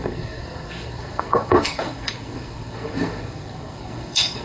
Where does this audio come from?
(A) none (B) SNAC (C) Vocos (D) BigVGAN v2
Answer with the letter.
B